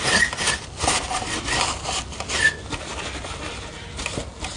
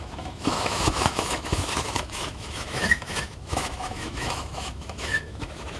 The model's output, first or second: second